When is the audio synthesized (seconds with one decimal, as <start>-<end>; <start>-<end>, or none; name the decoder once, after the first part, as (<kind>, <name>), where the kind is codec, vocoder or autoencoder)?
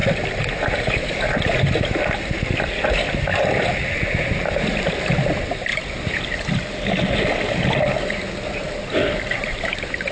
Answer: none